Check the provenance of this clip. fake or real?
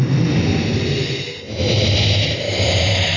real